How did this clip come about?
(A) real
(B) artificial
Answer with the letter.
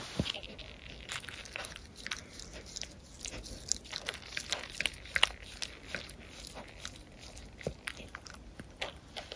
A